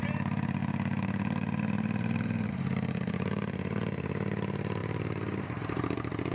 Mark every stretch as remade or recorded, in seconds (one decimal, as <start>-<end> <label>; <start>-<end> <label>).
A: 0.0-6.3 remade